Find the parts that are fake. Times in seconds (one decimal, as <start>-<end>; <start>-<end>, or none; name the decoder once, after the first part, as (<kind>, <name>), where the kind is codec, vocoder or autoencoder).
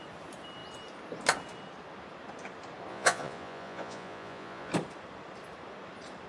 2.9-4.7 (vocoder, Vocos)